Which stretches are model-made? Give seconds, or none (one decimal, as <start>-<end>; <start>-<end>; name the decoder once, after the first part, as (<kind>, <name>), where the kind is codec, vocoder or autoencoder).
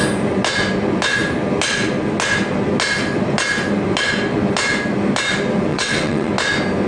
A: 5.7-6.3 (vocoder, WaveNeXt)